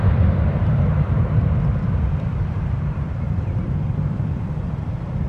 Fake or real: fake